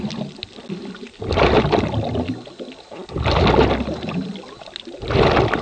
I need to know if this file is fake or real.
real